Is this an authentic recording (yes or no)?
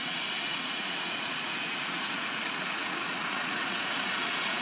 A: no